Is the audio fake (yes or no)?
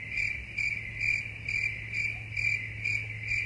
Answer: no